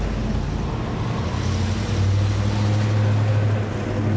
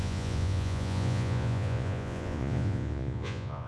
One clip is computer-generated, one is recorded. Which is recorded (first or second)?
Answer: first